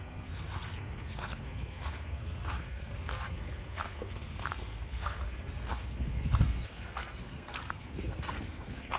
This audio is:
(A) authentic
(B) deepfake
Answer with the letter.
B